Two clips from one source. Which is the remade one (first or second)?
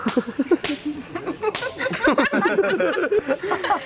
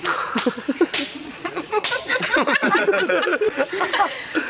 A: second